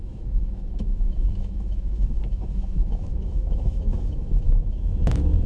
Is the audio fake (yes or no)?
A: yes